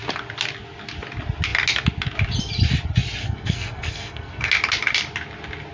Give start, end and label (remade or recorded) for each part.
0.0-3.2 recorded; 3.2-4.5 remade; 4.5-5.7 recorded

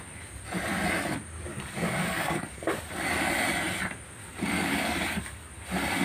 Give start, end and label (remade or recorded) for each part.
0.0-1.5 recorded; 1.5-3.3 remade; 3.3-4.3 recorded; 4.3-5.5 remade; 5.5-6.0 recorded

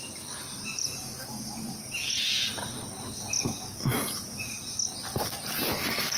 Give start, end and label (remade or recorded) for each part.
0.0-6.2 recorded